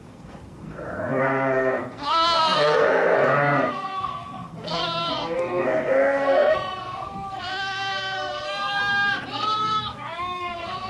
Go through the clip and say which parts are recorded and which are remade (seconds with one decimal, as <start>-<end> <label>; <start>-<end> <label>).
0.0-8.8 remade; 8.8-9.3 recorded; 9.3-10.9 remade

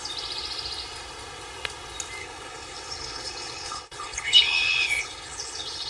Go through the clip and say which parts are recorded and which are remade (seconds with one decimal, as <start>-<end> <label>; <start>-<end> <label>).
0.0-2.2 recorded; 2.2-5.9 remade

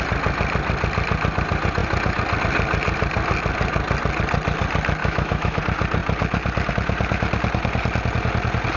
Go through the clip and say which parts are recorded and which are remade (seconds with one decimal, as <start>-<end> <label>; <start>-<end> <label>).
0.0-5.0 recorded; 5.0-5.6 remade; 5.6-8.8 recorded

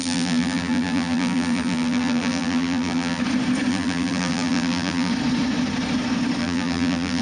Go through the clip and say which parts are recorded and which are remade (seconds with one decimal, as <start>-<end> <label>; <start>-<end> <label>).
0.0-3.2 remade; 3.2-3.7 recorded; 3.7-5.1 remade; 5.1-6.4 recorded; 6.4-7.2 remade

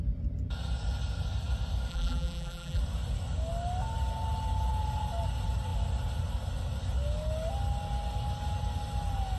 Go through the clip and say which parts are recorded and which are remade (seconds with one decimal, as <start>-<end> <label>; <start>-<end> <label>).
0.0-1.9 recorded; 1.9-2.8 remade; 2.8-9.4 recorded

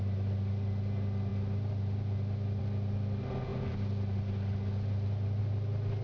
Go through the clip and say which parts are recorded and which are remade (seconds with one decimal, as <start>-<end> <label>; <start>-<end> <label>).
0.0-6.0 recorded